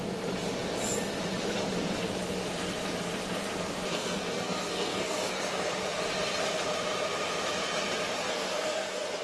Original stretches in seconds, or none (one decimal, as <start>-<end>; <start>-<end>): 0.0-3.9; 5.7-8.2